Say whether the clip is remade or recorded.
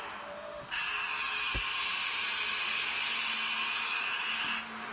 recorded